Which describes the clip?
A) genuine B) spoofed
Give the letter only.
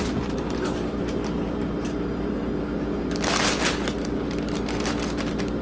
A